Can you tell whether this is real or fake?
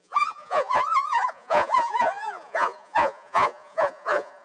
fake